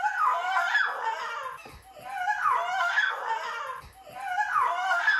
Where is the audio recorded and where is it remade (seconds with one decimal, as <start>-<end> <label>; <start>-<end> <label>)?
0.0-0.6 remade; 0.6-2.8 recorded; 2.8-3.2 remade; 3.2-4.7 recorded; 4.7-5.2 remade